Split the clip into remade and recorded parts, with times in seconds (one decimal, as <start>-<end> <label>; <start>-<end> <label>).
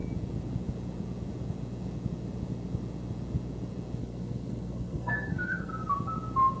0.0-4.0 recorded; 4.0-5.7 remade; 5.7-6.6 recorded